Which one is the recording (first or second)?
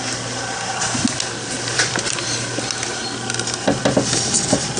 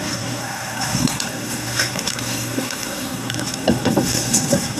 first